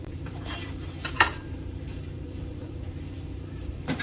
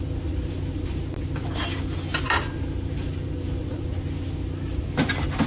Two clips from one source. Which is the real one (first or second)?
second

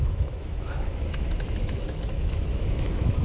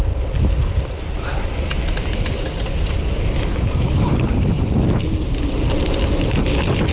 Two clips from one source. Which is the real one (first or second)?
second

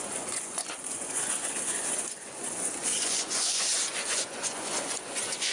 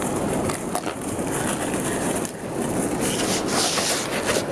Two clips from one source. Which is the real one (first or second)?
second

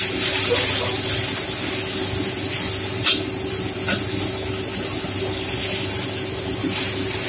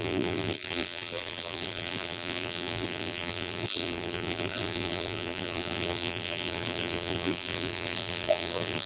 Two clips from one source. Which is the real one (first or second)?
first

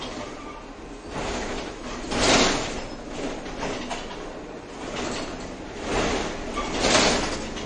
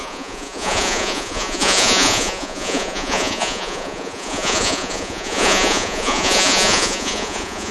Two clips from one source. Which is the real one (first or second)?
first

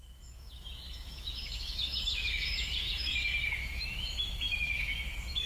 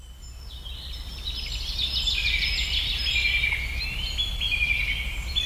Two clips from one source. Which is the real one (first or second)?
second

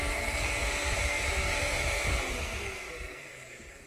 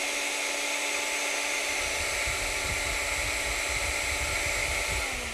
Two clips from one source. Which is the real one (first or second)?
second